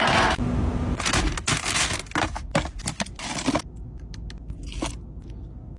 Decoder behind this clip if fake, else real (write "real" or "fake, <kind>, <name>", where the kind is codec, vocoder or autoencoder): real